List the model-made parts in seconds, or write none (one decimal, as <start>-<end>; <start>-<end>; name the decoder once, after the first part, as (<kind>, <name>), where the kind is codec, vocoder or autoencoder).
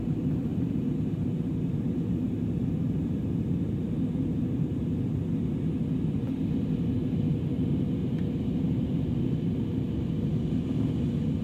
0.5-5.3 (vocoder, BigVGAN v2); 8.0-9.2